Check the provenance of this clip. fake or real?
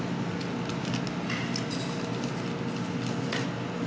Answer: real